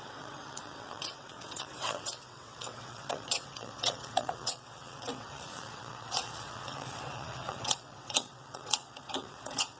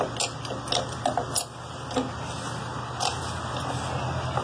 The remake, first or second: first